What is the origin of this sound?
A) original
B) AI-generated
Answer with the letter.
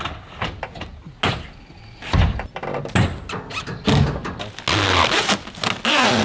A